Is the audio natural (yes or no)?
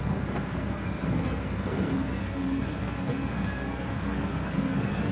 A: no